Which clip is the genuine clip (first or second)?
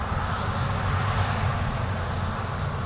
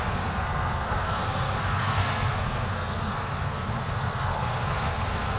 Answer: first